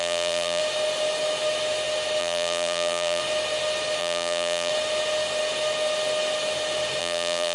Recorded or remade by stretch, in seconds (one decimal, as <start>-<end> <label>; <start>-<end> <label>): 0.0-0.6 remade; 0.6-2.2 recorded; 2.2-3.2 remade; 3.2-4.0 recorded; 4.0-4.7 remade; 4.7-7.0 recorded; 7.0-7.5 remade